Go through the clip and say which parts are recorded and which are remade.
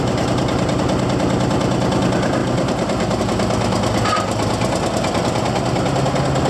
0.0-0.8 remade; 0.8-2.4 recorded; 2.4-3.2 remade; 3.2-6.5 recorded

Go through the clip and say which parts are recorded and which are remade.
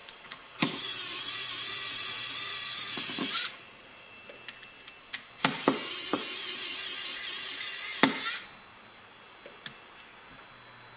0.0-4.1 remade; 4.1-5.8 recorded; 5.8-8.0 remade; 8.0-11.0 recorded